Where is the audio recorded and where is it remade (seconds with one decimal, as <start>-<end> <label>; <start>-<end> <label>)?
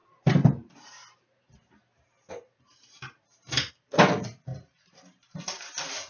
0.0-3.7 remade; 3.7-4.5 recorded; 4.5-6.1 remade